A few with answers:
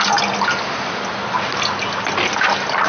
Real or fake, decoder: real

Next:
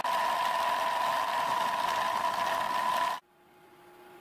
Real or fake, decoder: real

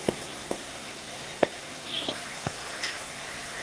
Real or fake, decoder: fake, codec, SNAC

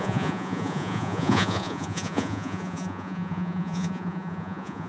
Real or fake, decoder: fake, vocoder, Vocos